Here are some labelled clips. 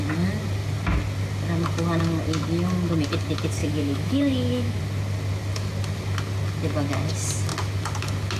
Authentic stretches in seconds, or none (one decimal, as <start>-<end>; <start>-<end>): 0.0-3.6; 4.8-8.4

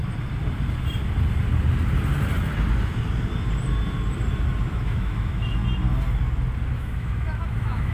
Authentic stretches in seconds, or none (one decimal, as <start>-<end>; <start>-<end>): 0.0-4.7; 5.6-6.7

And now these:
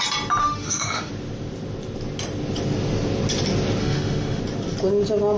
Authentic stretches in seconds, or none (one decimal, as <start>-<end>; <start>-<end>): 0.0-0.4; 1.1-3.8; 4.4-5.4

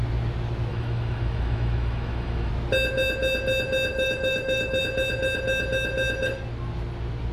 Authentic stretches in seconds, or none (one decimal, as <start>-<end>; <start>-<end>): 0.0-0.7; 2.5-3.9; 4.8-7.3

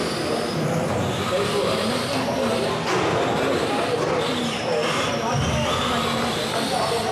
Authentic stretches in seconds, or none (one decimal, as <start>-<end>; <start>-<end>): 0.0-7.1

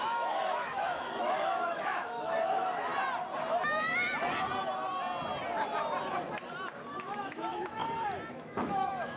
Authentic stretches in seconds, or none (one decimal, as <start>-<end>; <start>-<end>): 2.9-7.0; 7.8-8.3

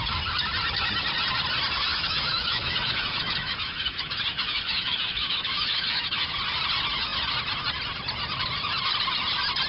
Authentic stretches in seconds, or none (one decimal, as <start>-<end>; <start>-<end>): 0.0-1.9; 6.3-9.7

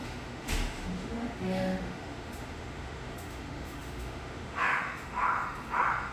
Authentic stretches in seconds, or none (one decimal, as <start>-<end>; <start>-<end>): none